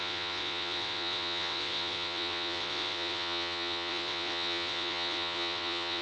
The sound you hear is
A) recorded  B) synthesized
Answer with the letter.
B